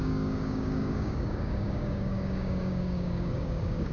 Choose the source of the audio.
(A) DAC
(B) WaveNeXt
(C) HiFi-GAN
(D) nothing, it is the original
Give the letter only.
A